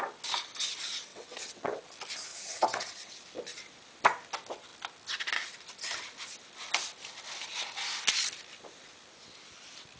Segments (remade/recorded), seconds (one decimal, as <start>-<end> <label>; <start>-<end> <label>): 0.0-1.1 recorded; 1.1-1.8 remade; 1.8-2.3 recorded; 2.3-3.1 remade; 3.1-10.0 recorded